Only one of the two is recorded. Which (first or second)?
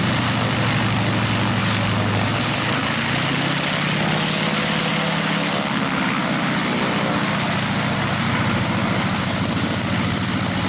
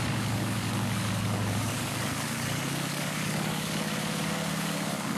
first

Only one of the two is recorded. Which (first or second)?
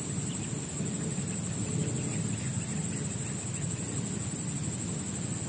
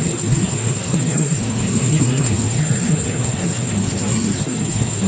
first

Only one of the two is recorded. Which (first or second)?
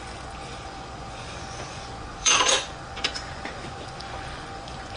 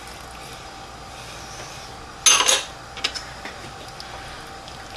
second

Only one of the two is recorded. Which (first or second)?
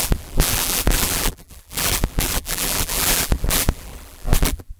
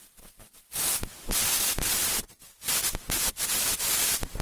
second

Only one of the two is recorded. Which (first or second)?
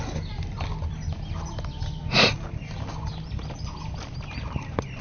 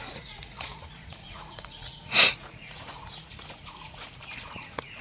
first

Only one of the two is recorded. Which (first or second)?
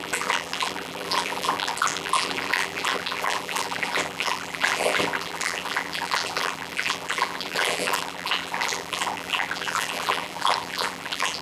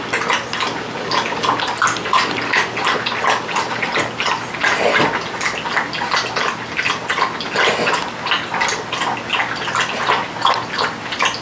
second